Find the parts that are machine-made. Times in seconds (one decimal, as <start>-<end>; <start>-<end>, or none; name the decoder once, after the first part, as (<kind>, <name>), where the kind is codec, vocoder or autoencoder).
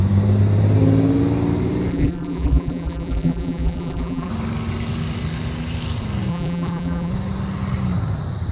1.9-4.3 (vocoder, BigVGAN v2); 6.3-7.1